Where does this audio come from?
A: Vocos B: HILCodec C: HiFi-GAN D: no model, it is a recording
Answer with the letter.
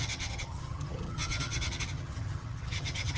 C